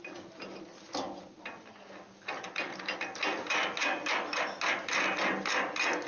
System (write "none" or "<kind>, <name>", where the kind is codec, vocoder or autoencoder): none